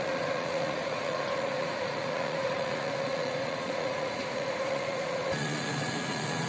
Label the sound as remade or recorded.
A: remade